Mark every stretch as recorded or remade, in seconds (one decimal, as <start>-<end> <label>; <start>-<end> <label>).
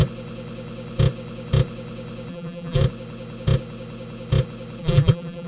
0.0-2.3 recorded; 2.3-2.8 remade; 2.8-4.8 recorded; 4.8-5.5 remade